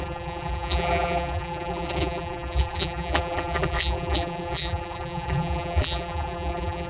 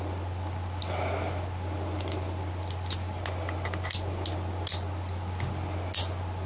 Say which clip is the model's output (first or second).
first